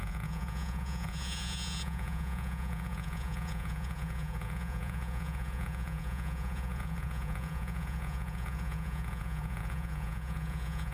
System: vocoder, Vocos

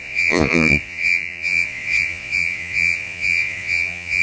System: vocoder, Vocos